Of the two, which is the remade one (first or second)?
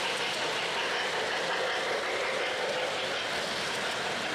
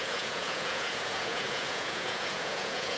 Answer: second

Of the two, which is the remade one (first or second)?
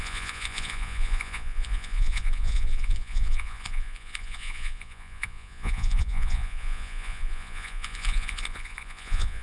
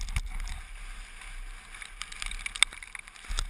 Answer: first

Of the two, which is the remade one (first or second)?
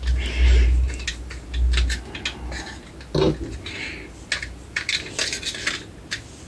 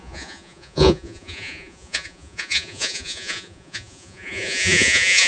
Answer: second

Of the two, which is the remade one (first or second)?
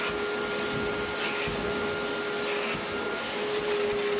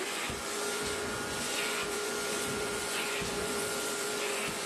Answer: second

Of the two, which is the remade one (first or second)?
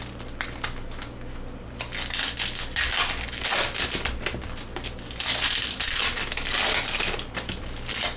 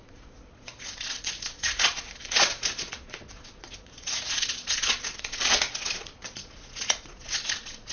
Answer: second